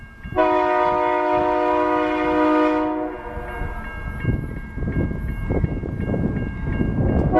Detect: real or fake real